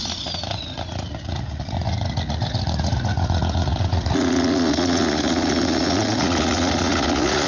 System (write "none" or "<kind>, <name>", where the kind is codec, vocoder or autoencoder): vocoder, Vocos